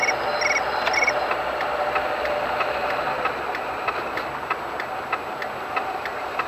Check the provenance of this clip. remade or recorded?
recorded